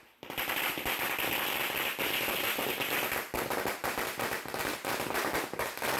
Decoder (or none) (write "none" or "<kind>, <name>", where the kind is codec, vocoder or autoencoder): none